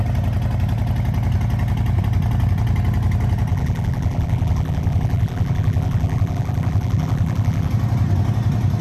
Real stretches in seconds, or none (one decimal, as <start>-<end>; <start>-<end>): 0.0-3.5; 7.7-8.8